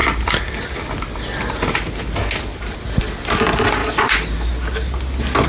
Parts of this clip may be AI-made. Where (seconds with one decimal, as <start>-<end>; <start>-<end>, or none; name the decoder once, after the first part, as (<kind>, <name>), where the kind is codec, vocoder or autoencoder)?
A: 0.0-0.5 (vocoder, BigVGAN v2)